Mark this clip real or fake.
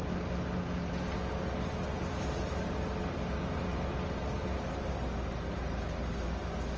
real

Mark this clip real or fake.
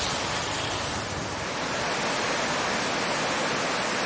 real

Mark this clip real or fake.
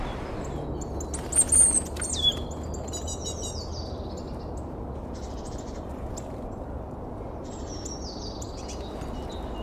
real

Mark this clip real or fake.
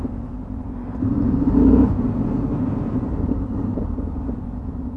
fake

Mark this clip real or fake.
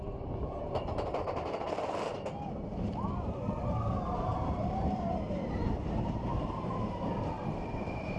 fake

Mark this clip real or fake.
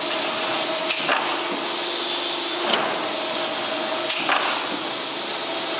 real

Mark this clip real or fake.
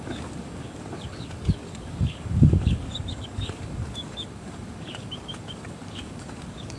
fake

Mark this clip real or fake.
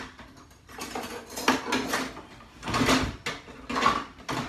real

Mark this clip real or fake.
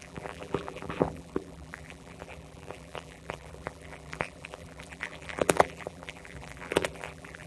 fake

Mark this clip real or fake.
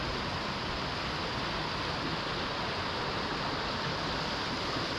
real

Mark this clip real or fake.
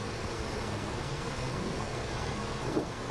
fake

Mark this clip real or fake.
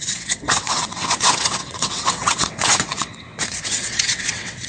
fake